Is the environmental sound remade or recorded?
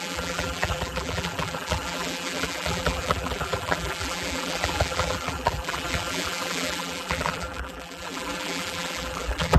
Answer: remade